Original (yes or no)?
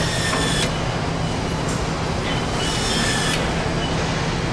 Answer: yes